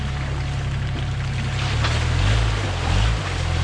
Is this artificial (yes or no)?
no